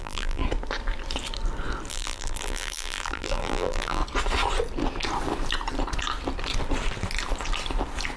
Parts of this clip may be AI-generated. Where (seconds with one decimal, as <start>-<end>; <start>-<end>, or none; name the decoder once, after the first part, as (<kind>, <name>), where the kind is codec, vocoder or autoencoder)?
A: 0.0-0.4 (vocoder, BigVGAN v2); 1.9-4.0